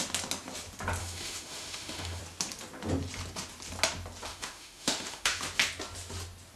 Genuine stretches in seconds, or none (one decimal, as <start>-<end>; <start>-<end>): 0.0-1.0; 2.2-4.3; 5.4-6.6